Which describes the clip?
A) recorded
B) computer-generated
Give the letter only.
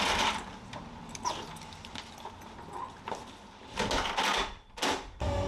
A